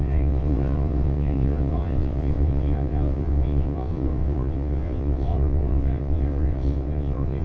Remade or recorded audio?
remade